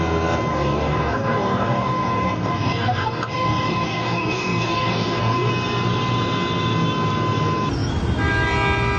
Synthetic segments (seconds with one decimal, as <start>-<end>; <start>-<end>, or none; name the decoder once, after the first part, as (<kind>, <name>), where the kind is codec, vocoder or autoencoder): 0.5-5.5 (codec, DAC)